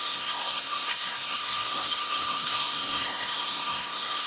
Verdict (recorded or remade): remade